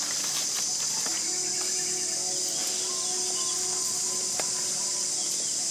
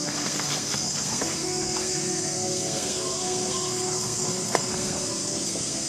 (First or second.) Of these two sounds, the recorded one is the first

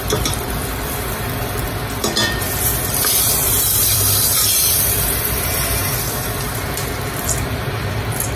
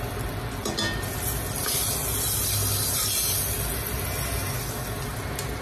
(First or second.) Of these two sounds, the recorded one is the second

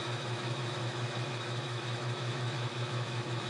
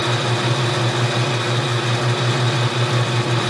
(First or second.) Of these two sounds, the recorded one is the second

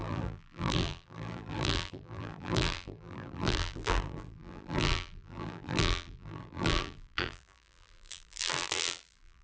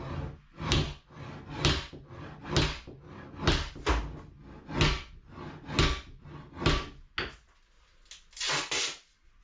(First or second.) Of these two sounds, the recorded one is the second